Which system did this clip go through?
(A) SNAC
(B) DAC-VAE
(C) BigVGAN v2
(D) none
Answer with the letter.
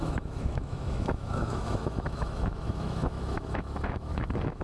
B